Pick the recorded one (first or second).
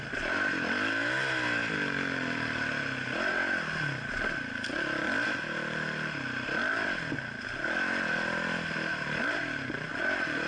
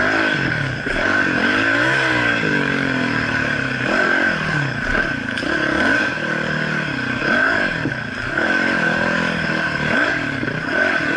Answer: first